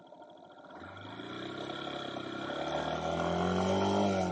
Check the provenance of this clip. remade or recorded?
recorded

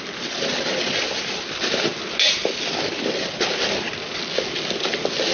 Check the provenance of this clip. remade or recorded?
recorded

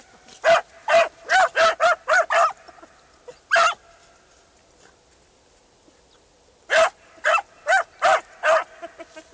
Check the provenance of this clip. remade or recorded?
recorded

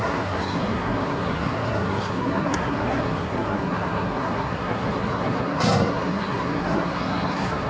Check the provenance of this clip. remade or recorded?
remade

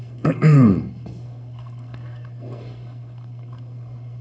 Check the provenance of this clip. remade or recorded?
remade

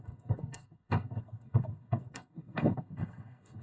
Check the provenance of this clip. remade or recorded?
remade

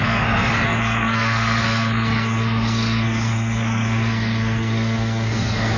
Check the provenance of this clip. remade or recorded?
remade